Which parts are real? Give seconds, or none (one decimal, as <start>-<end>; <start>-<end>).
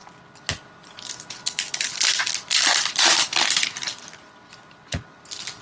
0.0-5.6